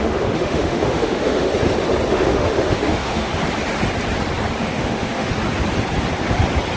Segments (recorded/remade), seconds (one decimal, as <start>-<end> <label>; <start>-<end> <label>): 0.0-1.5 remade; 1.5-2.1 recorded; 2.1-3.3 remade; 3.3-4.6 recorded; 4.6-5.3 remade; 5.3-6.8 recorded

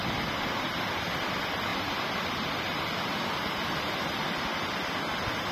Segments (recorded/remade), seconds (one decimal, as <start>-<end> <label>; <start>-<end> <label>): 0.0-5.5 recorded